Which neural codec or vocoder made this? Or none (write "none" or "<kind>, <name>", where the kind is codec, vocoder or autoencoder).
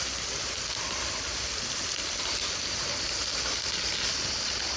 none